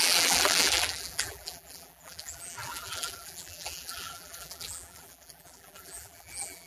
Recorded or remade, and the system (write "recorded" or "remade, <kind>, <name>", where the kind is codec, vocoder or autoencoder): remade, vocoder, BigVGAN v2